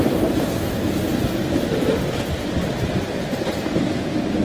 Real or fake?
real